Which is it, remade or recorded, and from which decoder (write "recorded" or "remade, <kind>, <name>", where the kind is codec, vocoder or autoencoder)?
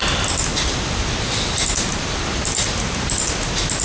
recorded